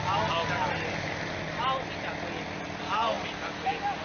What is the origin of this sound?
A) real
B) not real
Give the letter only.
A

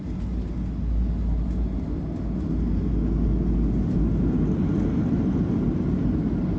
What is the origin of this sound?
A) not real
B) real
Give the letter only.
B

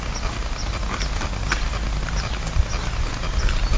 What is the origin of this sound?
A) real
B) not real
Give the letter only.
A